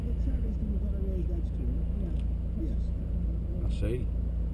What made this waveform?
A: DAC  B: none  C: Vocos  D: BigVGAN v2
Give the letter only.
B